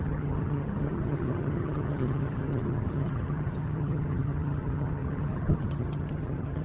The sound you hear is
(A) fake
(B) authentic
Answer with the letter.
A